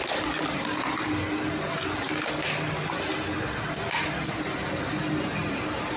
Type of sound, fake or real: real